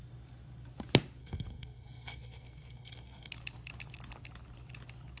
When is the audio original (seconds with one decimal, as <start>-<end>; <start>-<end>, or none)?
0.0-1.2; 3.3-5.2